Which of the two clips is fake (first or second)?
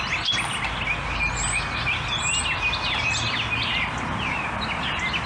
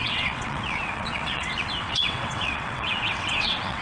second